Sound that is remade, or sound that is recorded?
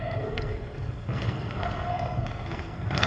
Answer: remade